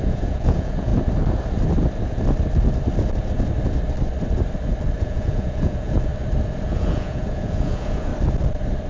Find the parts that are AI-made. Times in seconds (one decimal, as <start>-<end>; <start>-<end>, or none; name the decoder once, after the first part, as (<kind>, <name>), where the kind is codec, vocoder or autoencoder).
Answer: 0.0-0.9 (vocoder, Vocos); 5.0-6.1; 6.7-8.1